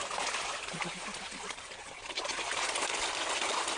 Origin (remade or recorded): recorded